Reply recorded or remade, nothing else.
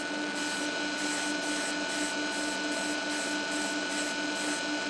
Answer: recorded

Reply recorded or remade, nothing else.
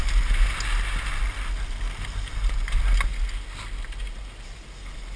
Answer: recorded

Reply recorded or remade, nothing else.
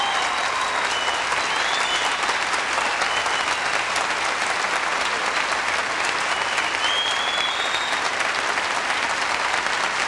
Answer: recorded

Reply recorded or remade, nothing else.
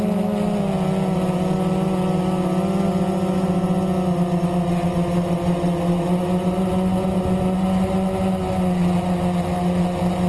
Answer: recorded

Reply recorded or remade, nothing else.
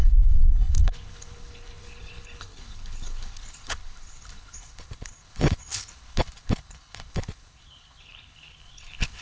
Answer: remade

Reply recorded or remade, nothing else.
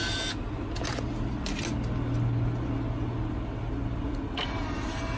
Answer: recorded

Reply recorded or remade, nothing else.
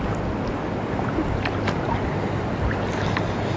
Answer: recorded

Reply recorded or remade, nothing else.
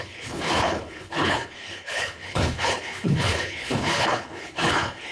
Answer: remade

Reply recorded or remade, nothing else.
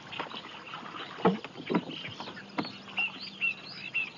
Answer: recorded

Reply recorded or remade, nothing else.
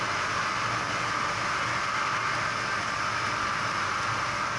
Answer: recorded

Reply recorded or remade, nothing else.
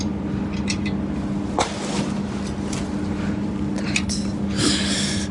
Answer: recorded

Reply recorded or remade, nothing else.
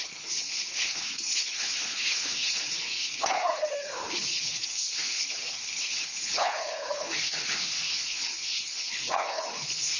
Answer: remade